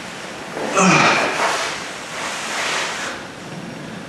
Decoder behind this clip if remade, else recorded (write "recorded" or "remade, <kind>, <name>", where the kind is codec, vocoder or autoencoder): recorded